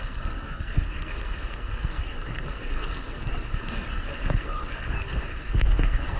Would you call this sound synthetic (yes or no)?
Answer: yes